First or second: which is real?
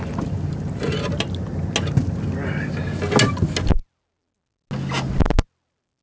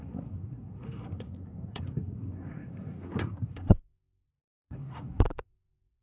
first